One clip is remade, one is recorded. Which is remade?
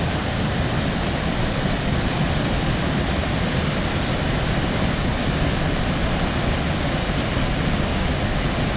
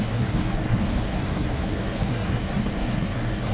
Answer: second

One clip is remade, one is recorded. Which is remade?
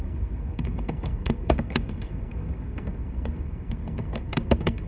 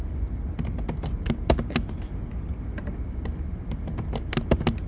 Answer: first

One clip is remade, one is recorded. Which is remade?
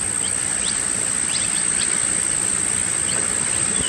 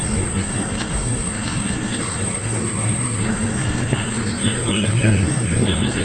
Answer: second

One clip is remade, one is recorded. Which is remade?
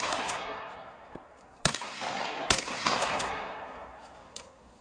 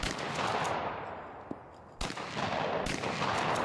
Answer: first